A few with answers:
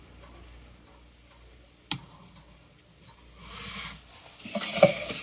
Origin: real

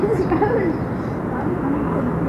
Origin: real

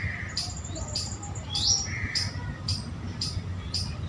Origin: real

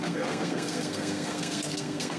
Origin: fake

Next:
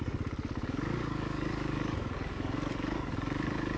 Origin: fake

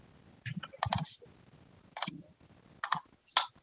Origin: real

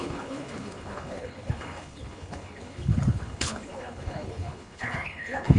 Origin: fake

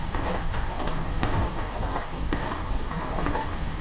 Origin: fake